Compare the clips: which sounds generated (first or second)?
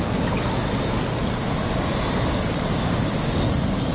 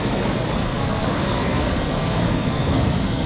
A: second